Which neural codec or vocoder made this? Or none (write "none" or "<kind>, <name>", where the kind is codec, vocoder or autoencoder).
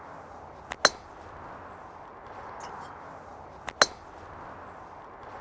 none